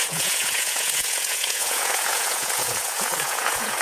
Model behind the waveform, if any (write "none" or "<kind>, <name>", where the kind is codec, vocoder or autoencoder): vocoder, Vocos